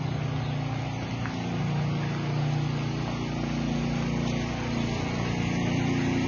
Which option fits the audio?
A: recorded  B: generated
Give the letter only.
A